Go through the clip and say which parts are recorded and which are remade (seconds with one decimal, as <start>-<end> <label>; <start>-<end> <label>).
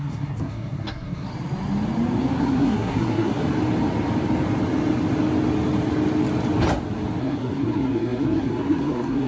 0.0-1.3 remade; 1.3-2.4 recorded; 2.4-3.4 remade; 3.4-7.2 recorded; 7.2-9.3 remade